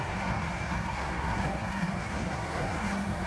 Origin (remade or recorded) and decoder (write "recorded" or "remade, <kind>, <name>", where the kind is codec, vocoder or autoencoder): remade, codec, SNAC